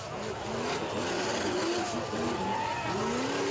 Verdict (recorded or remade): recorded